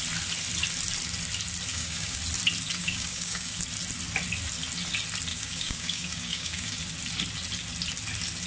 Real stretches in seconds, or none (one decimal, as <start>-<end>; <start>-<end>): 0.0-1.7; 2.2-2.8; 3.6-5.3; 6.8-8.5